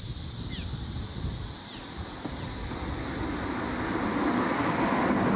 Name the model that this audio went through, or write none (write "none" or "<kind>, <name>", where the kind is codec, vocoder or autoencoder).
none